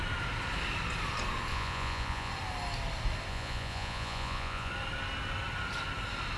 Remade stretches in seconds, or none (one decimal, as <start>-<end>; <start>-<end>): 1.5-2.3; 3.3-4.7